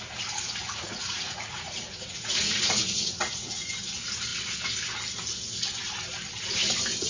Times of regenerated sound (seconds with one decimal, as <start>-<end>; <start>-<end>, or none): 0.6-3.7